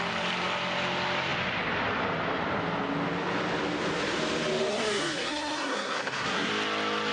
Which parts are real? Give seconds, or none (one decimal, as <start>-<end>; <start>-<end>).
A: 0.0-4.7; 6.5-7.1